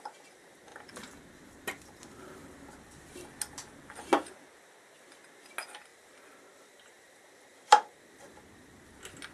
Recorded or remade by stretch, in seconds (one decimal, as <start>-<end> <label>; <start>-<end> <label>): 0.0-0.7 recorded; 0.7-3.1 remade; 3.1-5.9 recorded; 5.9-8.8 remade; 8.8-9.3 recorded